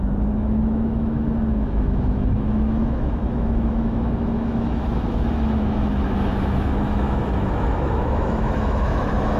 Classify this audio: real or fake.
fake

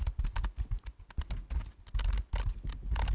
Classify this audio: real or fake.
real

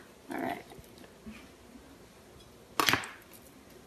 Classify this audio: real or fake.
real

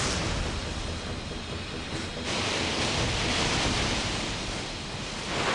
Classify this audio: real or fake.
real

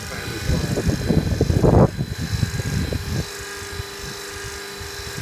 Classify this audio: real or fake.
real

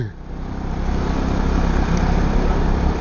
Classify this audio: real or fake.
real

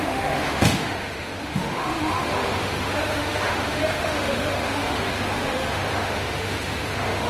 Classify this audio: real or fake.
fake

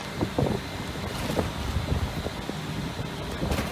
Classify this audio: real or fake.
real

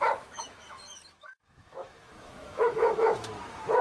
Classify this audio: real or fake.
fake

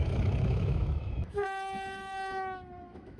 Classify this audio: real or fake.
fake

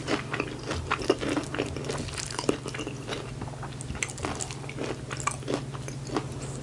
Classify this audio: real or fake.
real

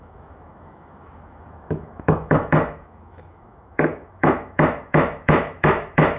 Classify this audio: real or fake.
fake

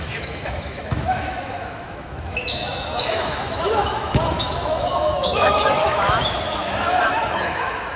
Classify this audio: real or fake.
fake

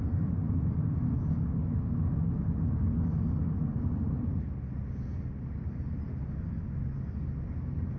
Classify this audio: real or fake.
real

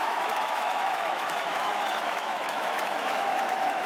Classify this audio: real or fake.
fake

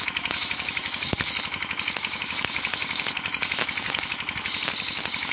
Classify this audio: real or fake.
fake